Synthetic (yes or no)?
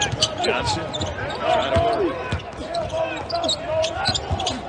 no